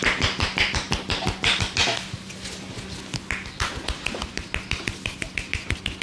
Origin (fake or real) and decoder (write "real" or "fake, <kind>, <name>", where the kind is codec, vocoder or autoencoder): real